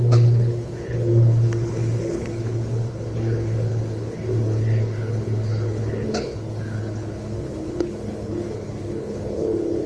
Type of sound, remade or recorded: remade